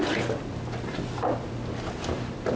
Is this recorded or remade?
recorded